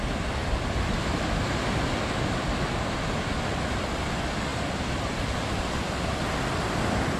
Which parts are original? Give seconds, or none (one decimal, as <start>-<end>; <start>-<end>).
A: 0.0-0.4; 1.6-7.2